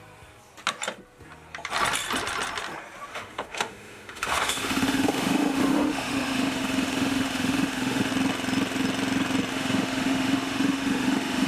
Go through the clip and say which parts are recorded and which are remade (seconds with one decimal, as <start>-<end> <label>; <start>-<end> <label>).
0.0-3.1 recorded; 3.1-8.1 remade; 8.1-9.5 recorded; 9.5-11.5 remade